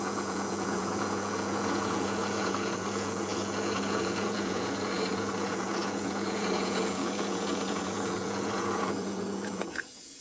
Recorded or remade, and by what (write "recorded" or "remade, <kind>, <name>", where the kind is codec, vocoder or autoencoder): remade, vocoder, Vocos